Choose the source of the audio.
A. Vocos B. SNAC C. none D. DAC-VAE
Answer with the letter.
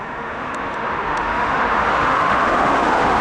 D